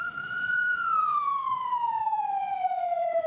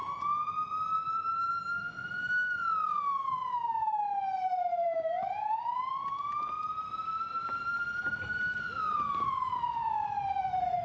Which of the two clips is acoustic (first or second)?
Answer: second